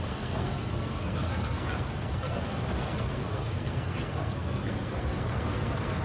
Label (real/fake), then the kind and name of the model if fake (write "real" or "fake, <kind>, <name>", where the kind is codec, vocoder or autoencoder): fake, codec, SNAC